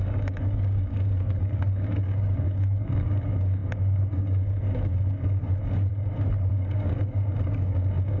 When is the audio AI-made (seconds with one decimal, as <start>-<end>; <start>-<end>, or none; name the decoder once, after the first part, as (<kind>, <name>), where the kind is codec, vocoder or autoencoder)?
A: 0.0-5.9 (codec, DAC); 6.5-8.2